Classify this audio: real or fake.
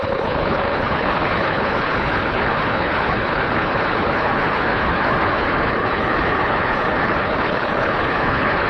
fake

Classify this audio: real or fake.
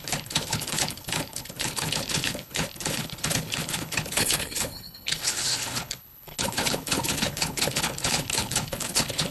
fake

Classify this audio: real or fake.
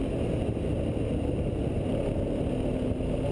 real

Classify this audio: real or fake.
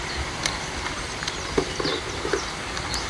real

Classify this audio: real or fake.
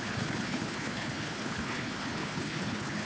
fake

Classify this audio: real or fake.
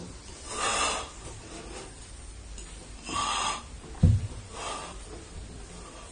real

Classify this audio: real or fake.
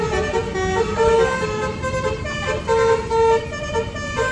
real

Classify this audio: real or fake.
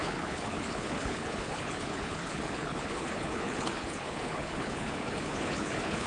fake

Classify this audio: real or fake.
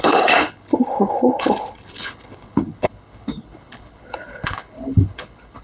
fake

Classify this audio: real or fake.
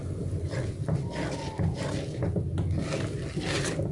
real